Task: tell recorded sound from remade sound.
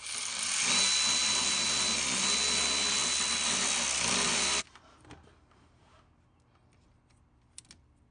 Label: recorded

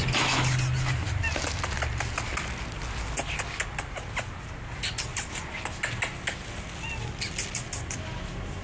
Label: recorded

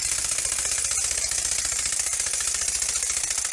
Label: recorded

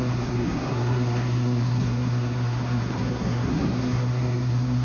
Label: remade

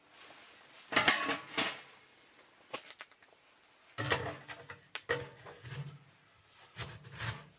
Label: recorded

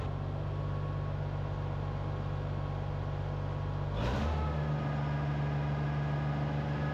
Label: recorded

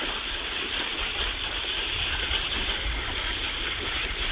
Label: recorded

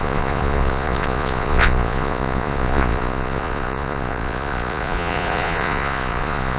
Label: remade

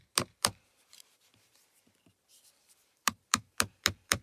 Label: remade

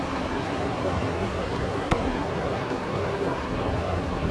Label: remade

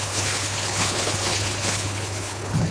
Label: remade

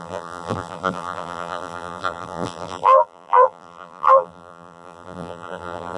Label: remade